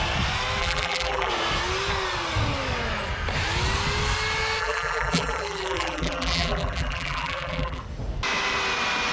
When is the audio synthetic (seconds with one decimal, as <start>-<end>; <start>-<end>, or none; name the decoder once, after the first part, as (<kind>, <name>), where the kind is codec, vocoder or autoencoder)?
0.6-1.3 (vocoder, BigVGAN v2); 4.6-7.8